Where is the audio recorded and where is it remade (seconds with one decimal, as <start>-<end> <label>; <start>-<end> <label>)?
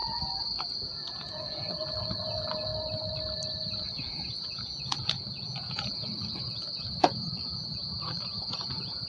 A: 0.0-0.8 recorded; 0.8-2.7 remade; 2.7-3.8 recorded; 3.8-9.1 remade